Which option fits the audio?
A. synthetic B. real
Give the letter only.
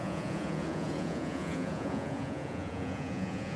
A